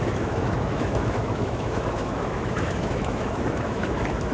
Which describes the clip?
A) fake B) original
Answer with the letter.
A